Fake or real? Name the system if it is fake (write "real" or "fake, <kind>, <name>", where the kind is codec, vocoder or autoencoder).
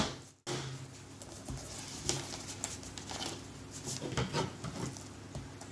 real